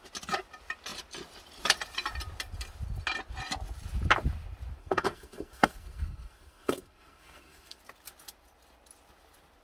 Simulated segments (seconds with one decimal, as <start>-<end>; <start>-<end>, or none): 4.8-7.8